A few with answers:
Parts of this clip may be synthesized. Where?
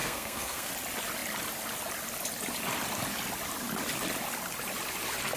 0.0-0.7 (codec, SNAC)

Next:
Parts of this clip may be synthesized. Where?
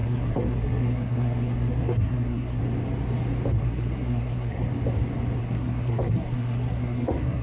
0.0-2.6 (codec, SNAC); 3.6-4.7; 5.4-7.4